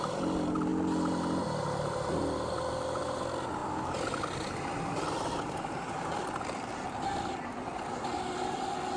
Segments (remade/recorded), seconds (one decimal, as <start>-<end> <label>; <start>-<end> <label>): 0.0-9.0 recorded